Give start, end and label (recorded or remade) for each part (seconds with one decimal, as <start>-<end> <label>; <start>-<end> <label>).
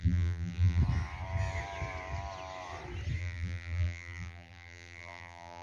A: 0.0-0.8 remade; 0.8-3.2 recorded; 3.2-5.6 remade